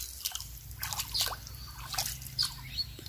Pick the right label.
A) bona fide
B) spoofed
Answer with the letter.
A